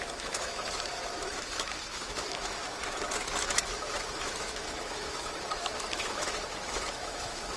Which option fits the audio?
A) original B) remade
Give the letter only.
B